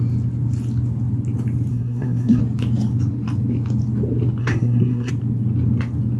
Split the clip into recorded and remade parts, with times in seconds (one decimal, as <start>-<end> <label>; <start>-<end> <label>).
0.0-1.7 recorded; 1.7-2.4 remade; 2.4-4.4 recorded; 4.4-5.1 remade; 5.1-6.2 recorded